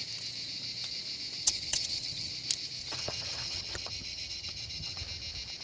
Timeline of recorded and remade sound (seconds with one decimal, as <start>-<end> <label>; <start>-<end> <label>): 0.0-1.4 recorded; 1.4-2.3 remade; 2.3-2.8 recorded; 2.8-5.0 remade; 5.0-5.6 recorded